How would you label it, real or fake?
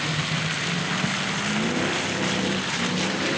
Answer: real